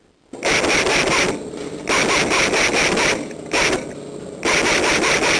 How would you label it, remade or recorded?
recorded